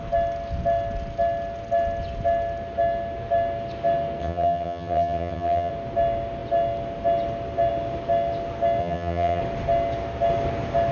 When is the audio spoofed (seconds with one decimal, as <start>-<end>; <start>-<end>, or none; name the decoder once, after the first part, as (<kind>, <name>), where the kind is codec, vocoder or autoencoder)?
4.2-5.7 (vocoder, HiFi-GAN); 8.8-9.4